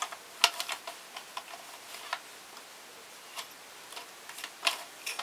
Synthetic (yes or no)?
no